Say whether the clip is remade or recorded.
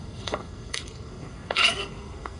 remade